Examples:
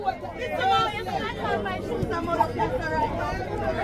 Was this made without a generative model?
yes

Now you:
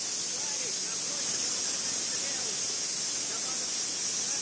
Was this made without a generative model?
yes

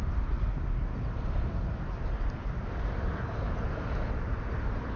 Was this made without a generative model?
yes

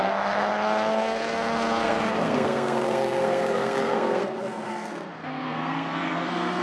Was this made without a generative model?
no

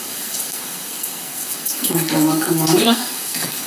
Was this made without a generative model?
no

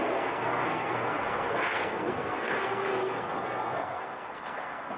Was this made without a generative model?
no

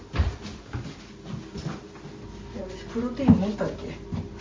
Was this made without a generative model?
yes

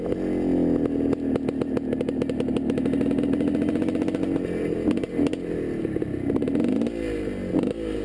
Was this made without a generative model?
yes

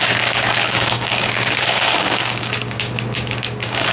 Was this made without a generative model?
no